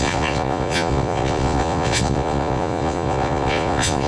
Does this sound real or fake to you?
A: fake